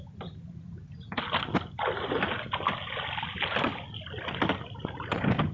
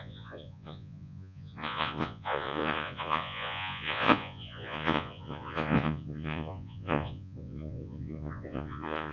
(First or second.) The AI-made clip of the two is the second